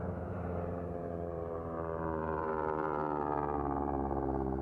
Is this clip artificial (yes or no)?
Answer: yes